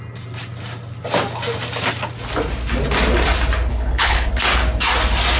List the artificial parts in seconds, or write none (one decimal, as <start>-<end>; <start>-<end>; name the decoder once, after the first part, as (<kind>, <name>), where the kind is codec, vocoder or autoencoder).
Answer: 3.7-4.3 (codec, HILCodec)